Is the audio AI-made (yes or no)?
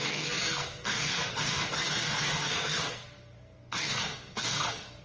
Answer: yes